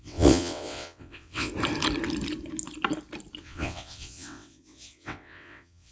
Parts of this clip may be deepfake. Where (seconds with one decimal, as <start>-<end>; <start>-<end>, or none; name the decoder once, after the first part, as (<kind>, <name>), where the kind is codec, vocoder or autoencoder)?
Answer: 0.0-1.5 (vocoder, WaveNeXt); 3.4-5.9